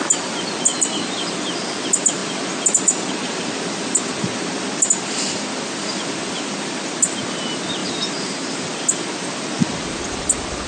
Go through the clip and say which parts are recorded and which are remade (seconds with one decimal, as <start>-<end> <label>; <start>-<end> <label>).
0.0-0.7 recorded; 0.7-1.4 remade; 1.4-7.8 recorded; 7.8-8.7 remade; 8.7-10.7 recorded